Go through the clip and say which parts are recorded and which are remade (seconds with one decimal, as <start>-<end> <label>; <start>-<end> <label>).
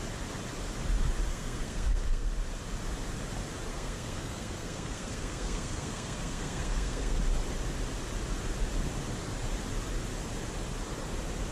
0.0-1.3 recorded; 1.3-2.3 remade; 2.3-3.7 recorded; 3.7-7.2 remade; 7.2-11.5 recorded